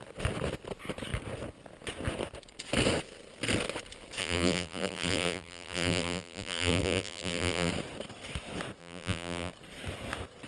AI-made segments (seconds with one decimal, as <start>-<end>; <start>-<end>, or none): 4.2-7.7; 8.8-9.5